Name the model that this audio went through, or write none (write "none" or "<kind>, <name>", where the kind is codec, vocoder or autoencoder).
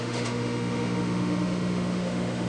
autoencoder, DAC-VAE